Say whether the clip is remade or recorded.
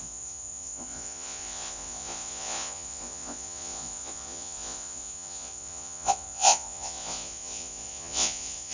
remade